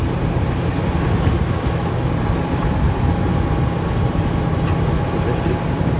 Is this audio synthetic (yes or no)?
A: no